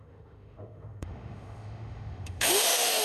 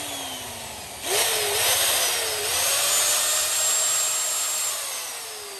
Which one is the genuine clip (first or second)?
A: second